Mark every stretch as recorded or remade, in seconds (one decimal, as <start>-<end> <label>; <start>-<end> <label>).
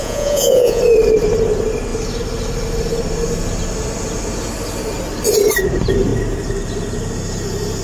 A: 0.0-0.8 remade; 0.8-7.8 recorded